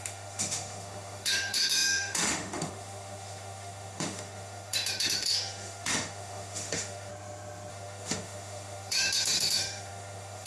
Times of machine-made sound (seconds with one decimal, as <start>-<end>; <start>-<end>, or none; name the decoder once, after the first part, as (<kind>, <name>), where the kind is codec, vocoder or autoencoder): 0.0-7.1 (autoencoder, DAC-VAE); 7.7-10.5